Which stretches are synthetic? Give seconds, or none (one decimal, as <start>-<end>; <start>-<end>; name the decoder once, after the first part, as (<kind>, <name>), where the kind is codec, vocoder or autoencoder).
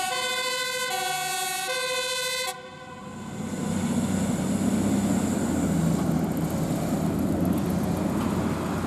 none